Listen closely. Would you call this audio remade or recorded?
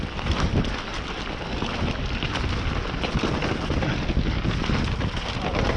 recorded